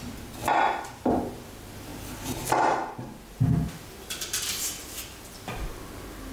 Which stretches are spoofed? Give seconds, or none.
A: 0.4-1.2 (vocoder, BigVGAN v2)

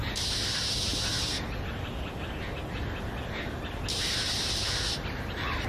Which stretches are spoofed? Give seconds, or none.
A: 0.0-0.9 (vocoder, BigVGAN v2); 4.3-5.7